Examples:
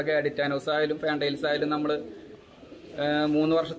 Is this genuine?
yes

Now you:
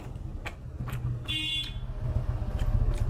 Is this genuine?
yes